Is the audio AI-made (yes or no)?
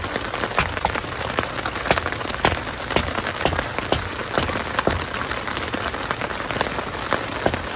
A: no